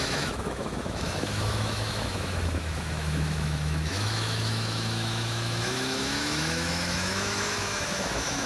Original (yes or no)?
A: no